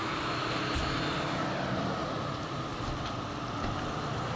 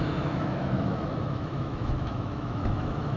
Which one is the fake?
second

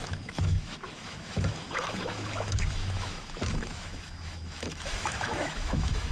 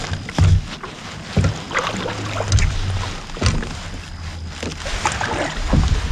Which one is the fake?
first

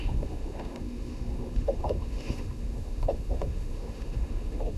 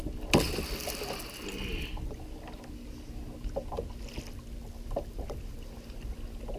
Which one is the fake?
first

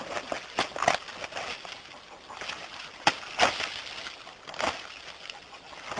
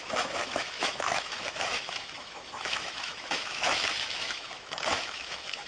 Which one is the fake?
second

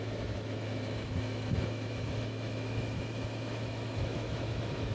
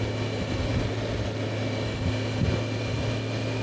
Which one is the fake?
first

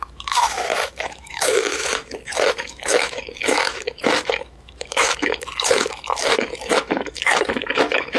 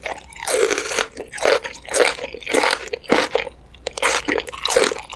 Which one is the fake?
first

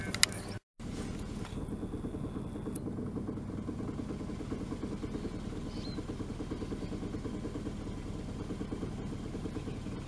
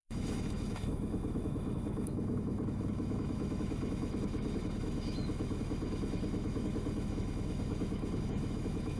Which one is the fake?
second